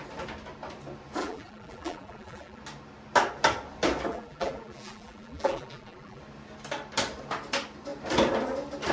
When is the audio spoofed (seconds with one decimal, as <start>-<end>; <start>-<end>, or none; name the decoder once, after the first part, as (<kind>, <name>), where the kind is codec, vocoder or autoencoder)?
1.2-2.6 (vocoder, BigVGAN v2); 4.1-6.2